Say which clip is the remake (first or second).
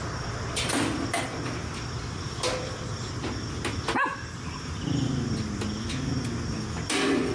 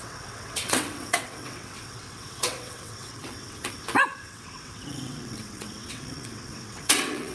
second